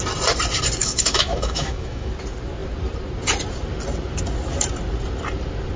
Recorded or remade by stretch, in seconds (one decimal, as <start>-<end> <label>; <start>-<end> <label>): 0.0-0.8 recorded; 0.8-2.1 remade; 2.1-5.8 recorded